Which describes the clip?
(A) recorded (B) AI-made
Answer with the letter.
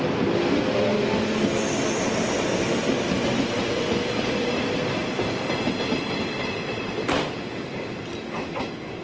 A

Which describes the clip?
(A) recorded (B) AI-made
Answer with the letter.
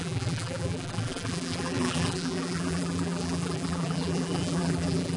B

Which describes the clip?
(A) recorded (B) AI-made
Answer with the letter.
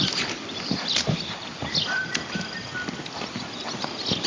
A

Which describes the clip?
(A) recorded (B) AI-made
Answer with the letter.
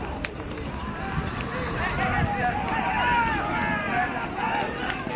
A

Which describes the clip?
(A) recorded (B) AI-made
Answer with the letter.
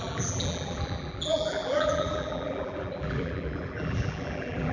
B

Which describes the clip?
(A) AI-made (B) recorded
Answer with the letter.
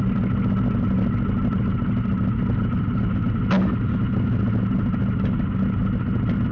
B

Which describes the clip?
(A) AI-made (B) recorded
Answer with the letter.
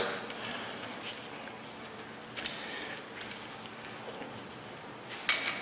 B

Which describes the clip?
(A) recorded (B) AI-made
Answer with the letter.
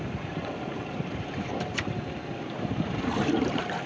B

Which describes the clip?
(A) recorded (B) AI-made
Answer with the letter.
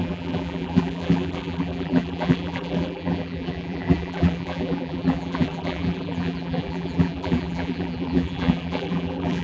B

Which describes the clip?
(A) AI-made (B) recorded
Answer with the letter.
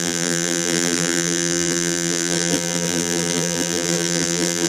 A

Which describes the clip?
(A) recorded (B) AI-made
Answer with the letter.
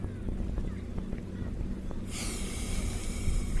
A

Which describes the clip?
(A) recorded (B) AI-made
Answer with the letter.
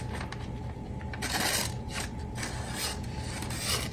A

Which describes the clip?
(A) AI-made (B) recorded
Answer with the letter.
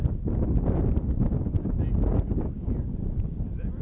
B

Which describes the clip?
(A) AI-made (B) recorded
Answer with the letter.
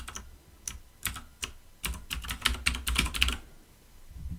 B